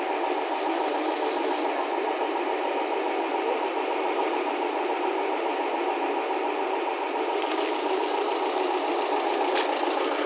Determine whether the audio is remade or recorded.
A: recorded